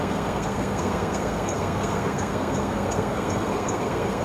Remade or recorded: remade